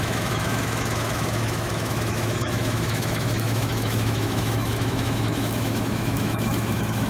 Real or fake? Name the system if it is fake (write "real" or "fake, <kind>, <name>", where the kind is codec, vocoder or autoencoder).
fake, autoencoder, DAC-VAE